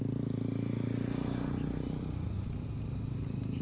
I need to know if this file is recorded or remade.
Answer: recorded